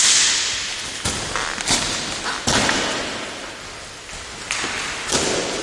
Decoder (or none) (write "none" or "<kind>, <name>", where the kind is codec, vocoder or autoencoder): none